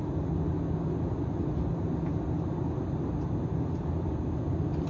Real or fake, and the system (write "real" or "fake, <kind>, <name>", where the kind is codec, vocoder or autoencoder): real